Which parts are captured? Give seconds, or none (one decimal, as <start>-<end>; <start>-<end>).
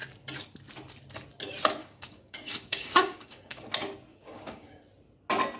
0.0-1.8; 3.6-4.1; 4.8-5.6